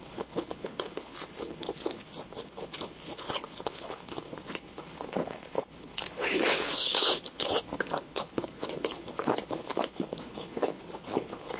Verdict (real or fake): fake